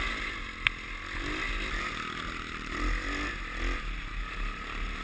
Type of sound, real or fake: real